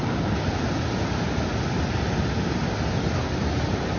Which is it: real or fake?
real